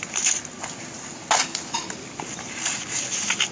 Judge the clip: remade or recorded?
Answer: recorded